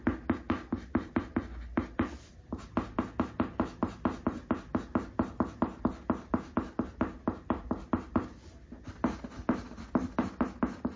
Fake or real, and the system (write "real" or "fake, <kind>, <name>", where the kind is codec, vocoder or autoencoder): real